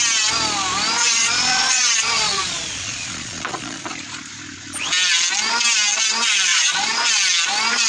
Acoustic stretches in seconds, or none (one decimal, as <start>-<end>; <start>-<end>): 0.0-1.0; 3.9-6.5; 7.1-7.9